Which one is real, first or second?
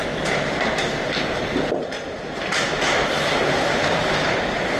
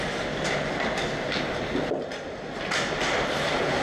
second